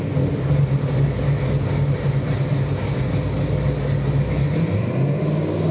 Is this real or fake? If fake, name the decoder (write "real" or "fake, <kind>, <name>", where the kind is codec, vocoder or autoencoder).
real